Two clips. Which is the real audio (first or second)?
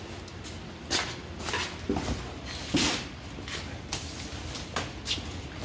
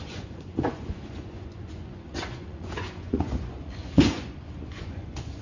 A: first